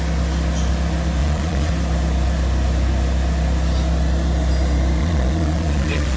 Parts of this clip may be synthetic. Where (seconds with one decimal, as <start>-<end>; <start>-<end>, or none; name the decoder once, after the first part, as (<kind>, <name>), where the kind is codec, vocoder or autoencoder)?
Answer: 1.2-1.7 (vocoder, Vocos); 5.0-6.2

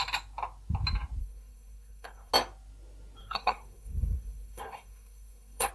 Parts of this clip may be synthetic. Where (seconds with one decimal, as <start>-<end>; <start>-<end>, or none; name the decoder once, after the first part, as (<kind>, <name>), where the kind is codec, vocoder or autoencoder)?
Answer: 1.2-2.3 (codec, SNAC); 3.2-5.7

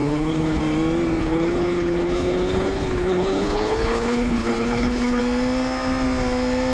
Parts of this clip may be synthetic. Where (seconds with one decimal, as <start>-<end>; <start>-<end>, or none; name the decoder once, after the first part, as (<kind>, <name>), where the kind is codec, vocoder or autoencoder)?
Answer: 0.0-0.6 (codec, HILCodec); 1.2-5.2

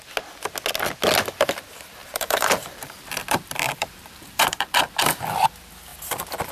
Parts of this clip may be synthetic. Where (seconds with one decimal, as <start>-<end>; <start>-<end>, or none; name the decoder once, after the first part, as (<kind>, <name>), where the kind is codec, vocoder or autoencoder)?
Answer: 2.0-4.9 (vocoder, BigVGAN v2)

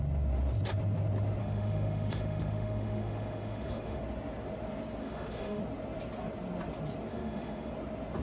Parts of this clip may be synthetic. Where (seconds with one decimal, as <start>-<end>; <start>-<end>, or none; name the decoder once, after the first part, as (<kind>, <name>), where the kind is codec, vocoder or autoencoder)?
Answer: 1.4-4.0 (autoencoder, DAC-VAE); 5.0-5.6; 7.1-7.7

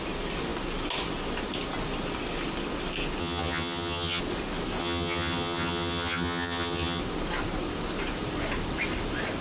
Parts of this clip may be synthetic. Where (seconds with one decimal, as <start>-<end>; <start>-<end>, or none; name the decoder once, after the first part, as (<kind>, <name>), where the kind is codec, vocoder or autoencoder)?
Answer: 3.2-4.2 (vocoder, HiFi-GAN); 4.8-7.0

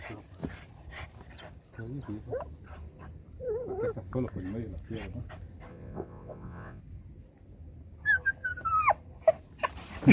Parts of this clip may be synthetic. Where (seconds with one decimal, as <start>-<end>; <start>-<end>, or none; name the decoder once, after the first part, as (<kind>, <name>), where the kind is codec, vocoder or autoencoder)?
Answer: 5.7-6.8 (vocoder, WaveNeXt)

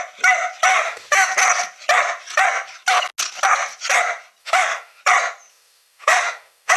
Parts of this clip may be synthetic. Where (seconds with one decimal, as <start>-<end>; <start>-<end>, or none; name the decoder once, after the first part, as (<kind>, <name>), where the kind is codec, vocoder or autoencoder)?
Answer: 0.7-1.3 (autoencoder, DAC-VAE); 4.4-5.0; 5.5-6.8